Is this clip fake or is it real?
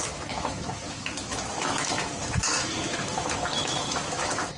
fake